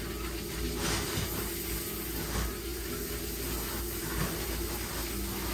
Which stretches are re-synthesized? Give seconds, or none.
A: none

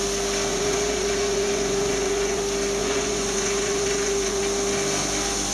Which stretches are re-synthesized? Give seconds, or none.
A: 0.5-2.4; 2.8-4.4